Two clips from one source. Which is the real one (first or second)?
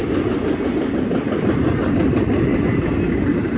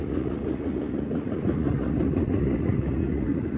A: first